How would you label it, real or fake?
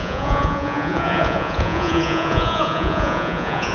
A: fake